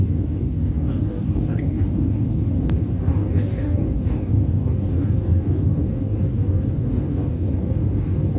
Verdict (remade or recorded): remade